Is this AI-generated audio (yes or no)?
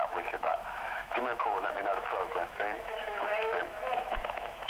yes